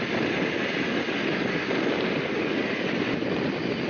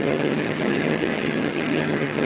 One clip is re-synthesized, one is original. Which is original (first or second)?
first